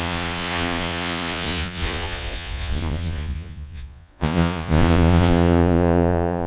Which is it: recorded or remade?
remade